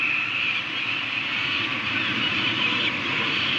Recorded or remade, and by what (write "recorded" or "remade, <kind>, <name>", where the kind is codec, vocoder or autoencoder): remade, vocoder, BigVGAN v2